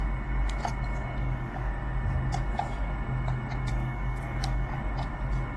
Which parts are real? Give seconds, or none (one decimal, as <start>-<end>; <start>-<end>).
0.0-1.2; 1.7-3.7; 4.8-5.6